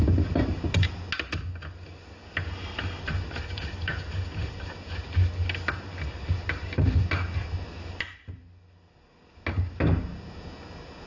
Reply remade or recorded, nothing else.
recorded